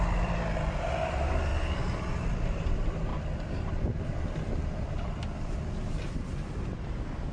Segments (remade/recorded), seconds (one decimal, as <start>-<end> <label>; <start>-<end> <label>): 0.0-1.5 remade; 1.5-2.7 recorded; 2.7-3.1 remade; 3.1-4.0 recorded; 4.0-7.3 remade